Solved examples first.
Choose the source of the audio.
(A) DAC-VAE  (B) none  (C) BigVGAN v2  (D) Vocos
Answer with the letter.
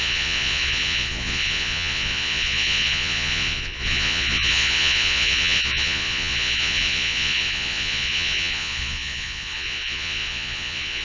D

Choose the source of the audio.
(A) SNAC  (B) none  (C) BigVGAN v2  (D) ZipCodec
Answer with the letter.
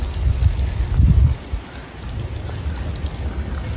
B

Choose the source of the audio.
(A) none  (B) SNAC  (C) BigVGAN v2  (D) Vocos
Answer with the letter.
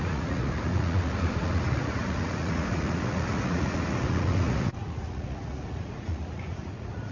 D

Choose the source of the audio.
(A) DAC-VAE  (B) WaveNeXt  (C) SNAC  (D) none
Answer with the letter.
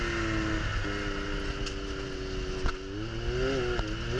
D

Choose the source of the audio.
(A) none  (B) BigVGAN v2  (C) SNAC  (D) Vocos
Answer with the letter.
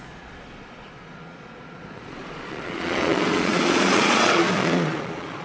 D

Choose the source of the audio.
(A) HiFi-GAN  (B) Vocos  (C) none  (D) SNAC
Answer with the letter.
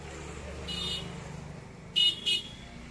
C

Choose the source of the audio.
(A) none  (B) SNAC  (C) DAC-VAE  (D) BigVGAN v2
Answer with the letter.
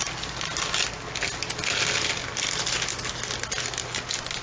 A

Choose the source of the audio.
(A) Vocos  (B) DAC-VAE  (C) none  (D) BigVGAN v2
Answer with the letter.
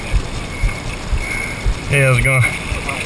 C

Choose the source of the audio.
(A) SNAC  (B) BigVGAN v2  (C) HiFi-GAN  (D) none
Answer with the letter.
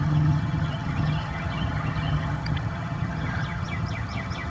C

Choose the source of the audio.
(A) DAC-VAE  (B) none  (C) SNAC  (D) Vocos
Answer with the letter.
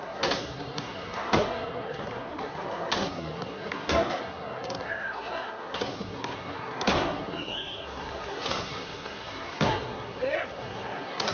C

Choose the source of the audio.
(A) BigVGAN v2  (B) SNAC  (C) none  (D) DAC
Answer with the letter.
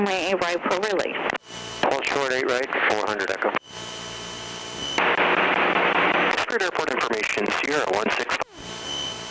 C